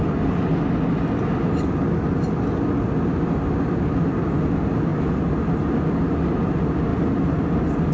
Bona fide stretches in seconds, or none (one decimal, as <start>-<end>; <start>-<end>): 0.0-7.9